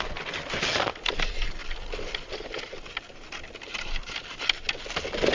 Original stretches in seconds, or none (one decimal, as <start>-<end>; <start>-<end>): 0.0-1.6; 3.1-5.3